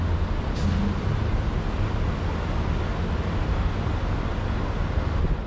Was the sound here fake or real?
real